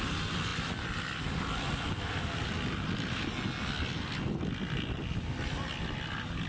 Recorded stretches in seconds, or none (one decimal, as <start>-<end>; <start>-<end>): 0.0-6.5